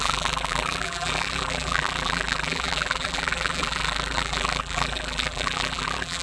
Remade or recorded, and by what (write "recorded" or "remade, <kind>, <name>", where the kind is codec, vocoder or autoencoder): remade, vocoder, BigVGAN v2